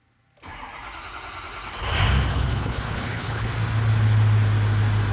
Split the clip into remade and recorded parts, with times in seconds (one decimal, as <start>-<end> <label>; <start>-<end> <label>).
0.0-2.3 recorded; 2.3-3.5 remade; 3.5-5.1 recorded